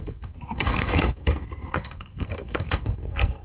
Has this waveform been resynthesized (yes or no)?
yes